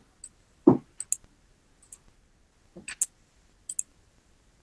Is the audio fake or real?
real